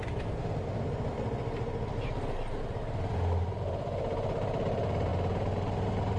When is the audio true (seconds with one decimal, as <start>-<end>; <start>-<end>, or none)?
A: 0.0-6.2

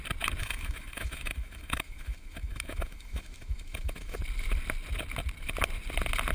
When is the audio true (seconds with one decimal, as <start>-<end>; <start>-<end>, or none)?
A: 0.0-0.4; 4.2-6.3

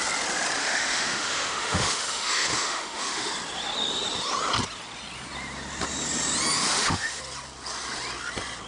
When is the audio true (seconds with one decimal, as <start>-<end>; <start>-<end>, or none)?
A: 0.0-0.6; 3.3-6.6; 7.2-8.7

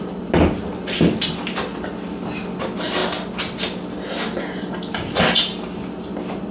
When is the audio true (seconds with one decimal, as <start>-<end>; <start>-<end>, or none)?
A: 0.0-6.5